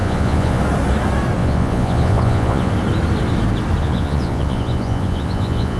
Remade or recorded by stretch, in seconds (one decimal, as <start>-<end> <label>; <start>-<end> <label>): 0.0-0.6 remade; 0.6-1.4 recorded; 1.4-2.7 remade; 2.7-3.8 recorded; 3.8-5.8 remade

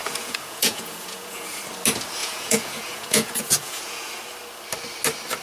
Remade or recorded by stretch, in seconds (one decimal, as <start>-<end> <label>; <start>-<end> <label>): 0.0-1.6 remade; 1.6-2.2 recorded; 2.2-4.2 remade; 4.2-5.4 recorded

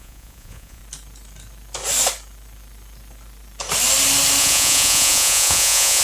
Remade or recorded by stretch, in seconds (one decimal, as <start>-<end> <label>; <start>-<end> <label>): 0.0-0.8 remade; 0.8-4.4 recorded; 4.4-6.0 remade

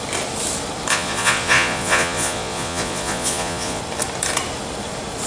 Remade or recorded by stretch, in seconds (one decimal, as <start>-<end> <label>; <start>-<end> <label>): 0.0-0.9 recorded; 0.9-3.8 remade; 3.8-5.3 recorded

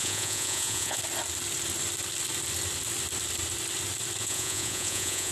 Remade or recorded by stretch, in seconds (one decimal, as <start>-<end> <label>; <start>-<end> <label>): 0.0-1.0 remade; 1.0-4.2 recorded; 4.2-5.3 remade

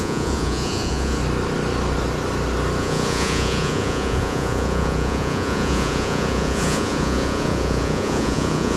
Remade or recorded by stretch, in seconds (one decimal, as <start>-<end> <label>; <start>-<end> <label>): 0.0-1.2 remade; 1.2-2.8 recorded; 2.8-8.8 remade

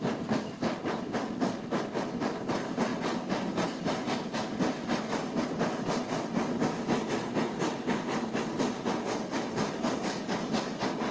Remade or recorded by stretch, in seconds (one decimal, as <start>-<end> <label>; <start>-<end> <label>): 0.0-11.1 recorded